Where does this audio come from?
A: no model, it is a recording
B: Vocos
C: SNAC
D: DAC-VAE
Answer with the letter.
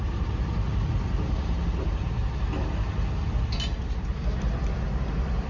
A